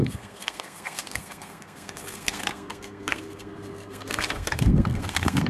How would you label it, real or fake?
fake